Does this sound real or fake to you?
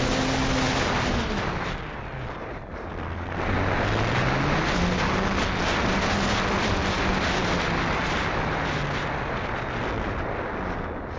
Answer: real